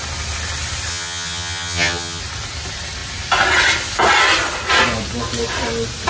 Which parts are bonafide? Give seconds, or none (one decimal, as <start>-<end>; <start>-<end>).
0.0-0.9; 2.2-6.1